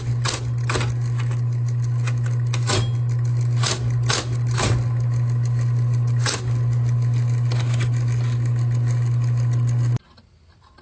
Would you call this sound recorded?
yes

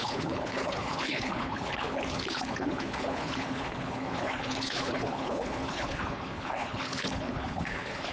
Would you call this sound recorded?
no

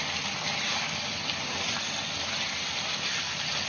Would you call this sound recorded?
yes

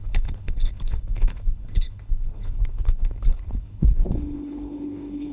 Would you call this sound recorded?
no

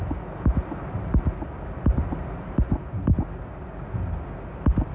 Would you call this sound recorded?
yes